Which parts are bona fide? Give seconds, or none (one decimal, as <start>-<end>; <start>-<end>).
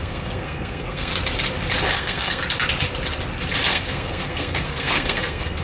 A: 1.1-1.9; 2.4-3.7